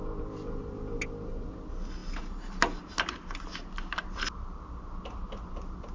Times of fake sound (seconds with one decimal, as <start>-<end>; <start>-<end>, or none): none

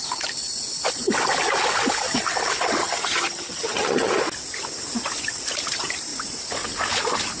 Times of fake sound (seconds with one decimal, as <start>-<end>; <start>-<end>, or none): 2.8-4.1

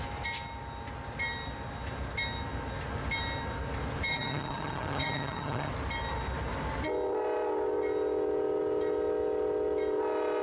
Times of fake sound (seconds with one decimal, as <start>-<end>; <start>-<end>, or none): 4.1-5.7

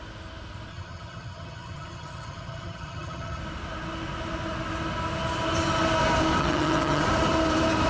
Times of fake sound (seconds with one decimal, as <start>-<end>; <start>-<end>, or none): 0.7-3.4; 6.4-7.0

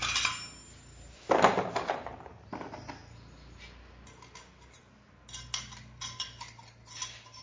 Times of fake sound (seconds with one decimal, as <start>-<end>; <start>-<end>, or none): none

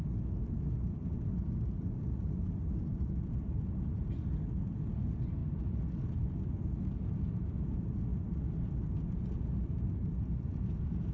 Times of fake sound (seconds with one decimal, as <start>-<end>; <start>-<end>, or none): none

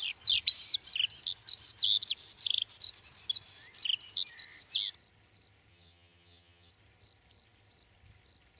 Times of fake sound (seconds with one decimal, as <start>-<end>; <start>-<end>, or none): 5.7-6.7

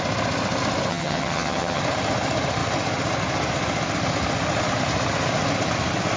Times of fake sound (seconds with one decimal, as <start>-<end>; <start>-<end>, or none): 0.9-1.8